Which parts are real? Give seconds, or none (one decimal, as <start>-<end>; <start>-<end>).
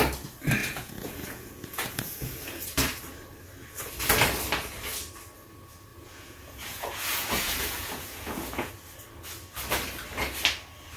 0.0-0.6; 2.6-5.9; 8.7-11.0